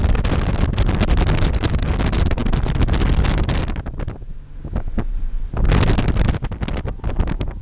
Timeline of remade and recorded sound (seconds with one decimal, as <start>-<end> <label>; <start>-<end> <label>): 0.0-7.6 recorded